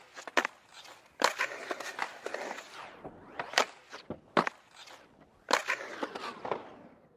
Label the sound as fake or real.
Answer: real